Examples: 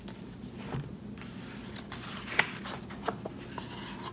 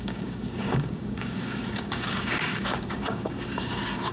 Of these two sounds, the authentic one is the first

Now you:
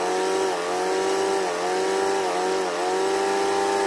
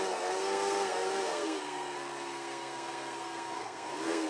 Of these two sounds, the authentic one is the first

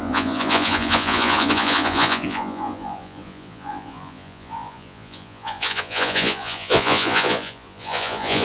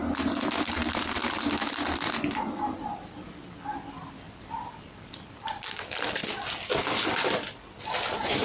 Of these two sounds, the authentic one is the second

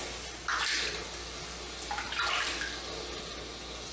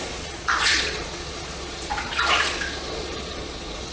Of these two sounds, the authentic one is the first